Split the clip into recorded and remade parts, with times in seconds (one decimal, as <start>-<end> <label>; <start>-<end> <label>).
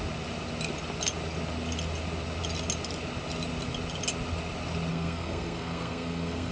0.0-4.9 recorded; 4.9-6.5 remade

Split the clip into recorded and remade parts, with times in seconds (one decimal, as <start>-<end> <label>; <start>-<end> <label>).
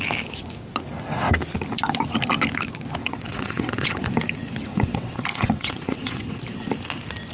0.0-3.0 recorded; 3.0-4.0 remade; 4.0-4.7 recorded; 4.7-6.4 remade; 6.4-7.3 recorded